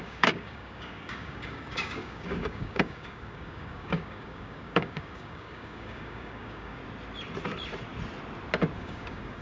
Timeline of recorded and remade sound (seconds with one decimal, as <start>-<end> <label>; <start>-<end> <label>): 0.0-6.8 remade; 6.8-8.8 recorded; 8.8-9.4 remade